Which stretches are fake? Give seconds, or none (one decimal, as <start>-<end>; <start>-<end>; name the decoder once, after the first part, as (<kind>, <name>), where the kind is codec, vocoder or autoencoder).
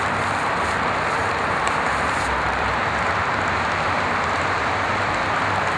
1.2-4.7 (vocoder, BigVGAN v2)